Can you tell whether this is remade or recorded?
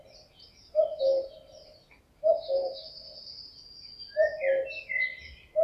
recorded